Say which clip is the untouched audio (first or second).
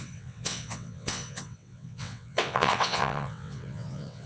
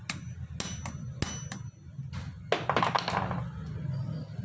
second